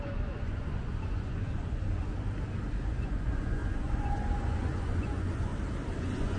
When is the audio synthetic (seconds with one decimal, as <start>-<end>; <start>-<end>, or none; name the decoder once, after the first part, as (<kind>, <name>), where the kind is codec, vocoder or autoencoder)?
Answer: 0.0-2.1 (vocoder, Vocos); 2.8-5.5; 6.0-6.4